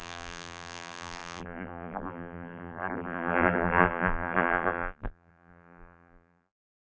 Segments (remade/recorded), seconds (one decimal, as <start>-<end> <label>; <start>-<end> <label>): 0.0-6.8 remade